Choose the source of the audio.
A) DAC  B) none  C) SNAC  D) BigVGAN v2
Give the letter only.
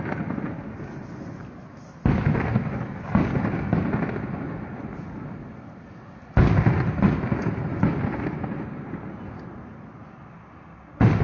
B